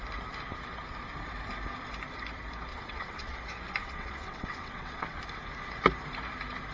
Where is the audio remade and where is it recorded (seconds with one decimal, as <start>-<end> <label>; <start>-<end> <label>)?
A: 0.0-2.7 recorded; 2.7-3.4 remade; 3.4-3.8 recorded; 3.8-5.2 remade; 5.2-6.7 recorded